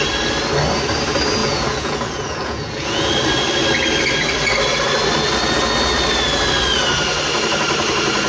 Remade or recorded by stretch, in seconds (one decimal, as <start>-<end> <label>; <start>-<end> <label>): 0.0-1.4 recorded; 1.4-3.1 remade; 3.1-8.3 recorded